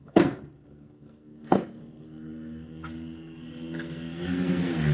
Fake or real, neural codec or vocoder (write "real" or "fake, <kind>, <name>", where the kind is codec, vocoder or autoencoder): fake, codec, SNAC